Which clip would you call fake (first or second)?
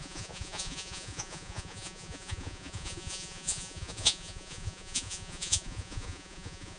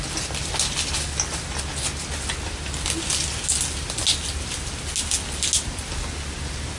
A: first